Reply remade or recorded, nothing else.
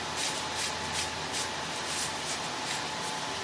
recorded